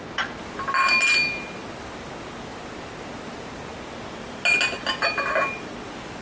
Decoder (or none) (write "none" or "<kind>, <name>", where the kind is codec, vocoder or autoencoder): none